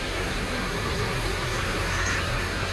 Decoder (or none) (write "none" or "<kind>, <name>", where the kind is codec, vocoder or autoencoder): codec, SNAC